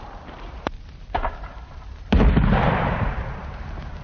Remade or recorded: remade